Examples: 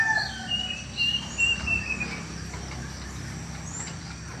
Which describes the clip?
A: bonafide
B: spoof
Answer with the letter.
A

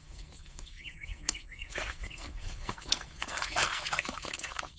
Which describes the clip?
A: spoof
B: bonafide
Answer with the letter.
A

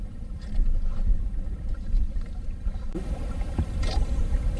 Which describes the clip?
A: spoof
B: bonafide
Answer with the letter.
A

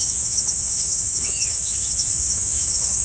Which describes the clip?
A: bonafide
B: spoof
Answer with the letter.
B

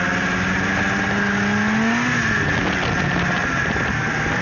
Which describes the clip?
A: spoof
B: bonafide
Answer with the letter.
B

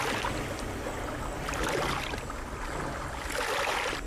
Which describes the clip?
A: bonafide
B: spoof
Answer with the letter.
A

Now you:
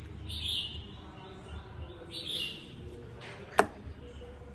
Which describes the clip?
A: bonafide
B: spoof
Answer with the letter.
A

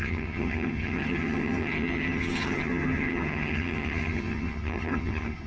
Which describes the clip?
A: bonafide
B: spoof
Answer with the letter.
B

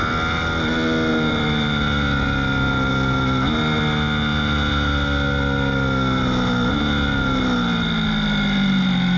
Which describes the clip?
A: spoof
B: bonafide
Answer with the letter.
B